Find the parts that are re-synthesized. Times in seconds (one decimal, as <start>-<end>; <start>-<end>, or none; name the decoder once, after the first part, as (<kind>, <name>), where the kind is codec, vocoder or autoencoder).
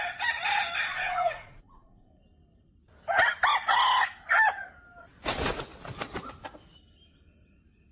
0.9-2.1 (vocoder, Vocos)